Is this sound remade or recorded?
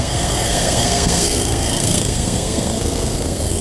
remade